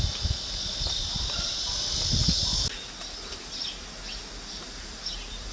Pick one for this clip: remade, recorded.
recorded